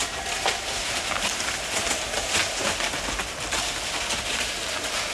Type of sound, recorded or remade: recorded